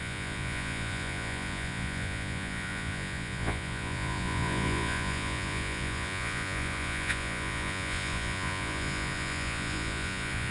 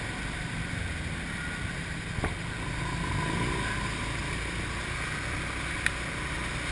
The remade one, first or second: first